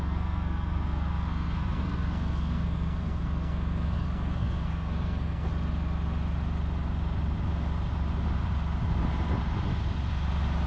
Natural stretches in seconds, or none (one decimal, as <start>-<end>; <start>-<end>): 5.5-10.7